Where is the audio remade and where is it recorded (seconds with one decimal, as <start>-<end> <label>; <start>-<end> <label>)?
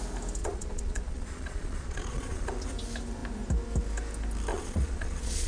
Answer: 0.0-0.4 recorded; 0.4-2.5 remade; 2.5-4.5 recorded; 4.5-5.5 remade